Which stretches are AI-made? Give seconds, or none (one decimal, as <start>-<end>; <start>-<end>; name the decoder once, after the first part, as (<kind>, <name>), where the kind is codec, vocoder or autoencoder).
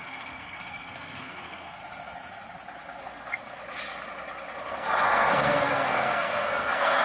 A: 0.0-1.8 (codec, SNAC); 3.0-3.6; 4.6-7.0